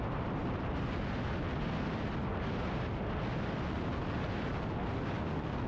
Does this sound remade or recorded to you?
recorded